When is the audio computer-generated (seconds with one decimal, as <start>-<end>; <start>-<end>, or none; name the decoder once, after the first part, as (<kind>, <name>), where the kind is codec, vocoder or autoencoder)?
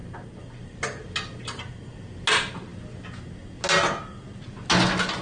none